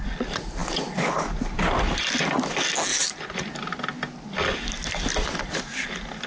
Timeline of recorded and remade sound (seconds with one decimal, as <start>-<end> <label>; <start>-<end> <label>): 0.0-2.9 recorded; 2.9-3.8 remade; 3.8-6.3 recorded